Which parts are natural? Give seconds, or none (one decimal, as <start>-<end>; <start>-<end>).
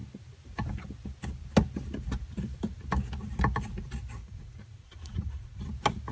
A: 0.0-4.2; 5.6-6.1